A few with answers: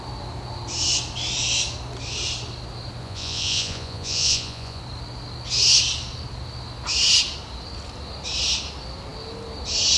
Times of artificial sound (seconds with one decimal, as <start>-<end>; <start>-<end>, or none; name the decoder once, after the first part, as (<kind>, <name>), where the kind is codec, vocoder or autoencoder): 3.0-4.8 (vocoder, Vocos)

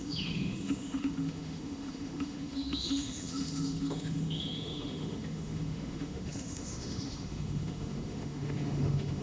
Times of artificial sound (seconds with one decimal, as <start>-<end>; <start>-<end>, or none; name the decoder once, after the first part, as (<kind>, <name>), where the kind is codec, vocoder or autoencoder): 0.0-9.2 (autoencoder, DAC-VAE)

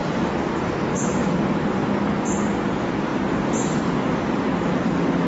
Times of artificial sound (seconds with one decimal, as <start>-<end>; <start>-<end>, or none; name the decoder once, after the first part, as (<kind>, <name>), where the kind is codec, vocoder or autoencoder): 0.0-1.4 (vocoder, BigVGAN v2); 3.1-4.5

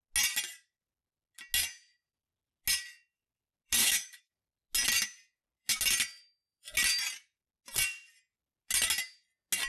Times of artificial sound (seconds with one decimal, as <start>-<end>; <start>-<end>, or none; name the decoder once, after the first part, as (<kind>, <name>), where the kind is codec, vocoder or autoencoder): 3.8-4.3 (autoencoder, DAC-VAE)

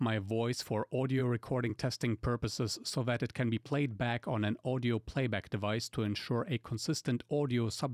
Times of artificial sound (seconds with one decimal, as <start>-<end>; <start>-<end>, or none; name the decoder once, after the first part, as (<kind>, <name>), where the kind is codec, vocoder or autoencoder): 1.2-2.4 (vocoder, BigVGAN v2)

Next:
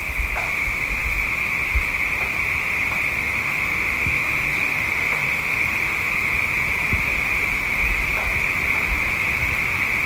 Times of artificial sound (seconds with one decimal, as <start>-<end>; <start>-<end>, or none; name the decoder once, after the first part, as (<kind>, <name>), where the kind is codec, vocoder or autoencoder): 3.2-6.1 (autoencoder, DAC-VAE)

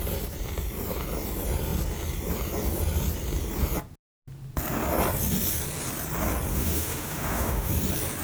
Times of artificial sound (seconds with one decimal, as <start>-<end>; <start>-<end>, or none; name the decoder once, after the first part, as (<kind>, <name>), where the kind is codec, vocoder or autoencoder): 6.5-7.7 (autoencoder, DAC-VAE)